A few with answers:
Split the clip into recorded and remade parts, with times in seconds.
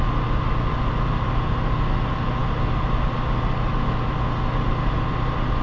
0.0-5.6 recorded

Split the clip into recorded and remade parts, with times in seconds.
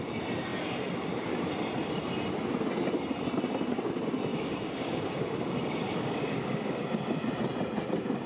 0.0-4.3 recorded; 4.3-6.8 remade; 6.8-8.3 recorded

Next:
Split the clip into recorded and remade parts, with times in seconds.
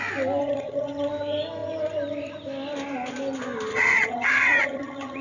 0.0-0.4 recorded; 0.4-1.1 remade; 1.1-3.7 recorded; 3.7-5.2 remade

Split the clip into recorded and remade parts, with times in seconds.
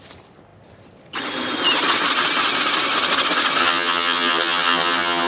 0.0-3.6 recorded; 3.6-5.3 remade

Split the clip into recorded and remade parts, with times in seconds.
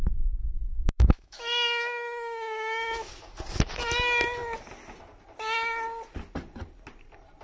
0.0-0.4 recorded; 0.4-3.1 remade; 3.1-7.4 recorded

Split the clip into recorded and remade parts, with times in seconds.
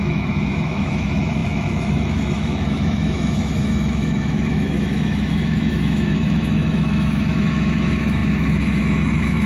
0.0-9.5 remade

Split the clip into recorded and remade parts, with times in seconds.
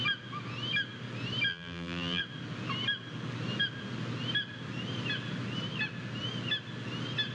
0.0-1.5 recorded; 1.5-2.2 remade; 2.2-7.3 recorded